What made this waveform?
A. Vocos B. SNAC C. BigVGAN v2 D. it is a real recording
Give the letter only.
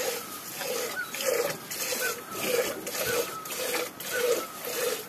D